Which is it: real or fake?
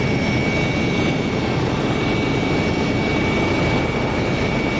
real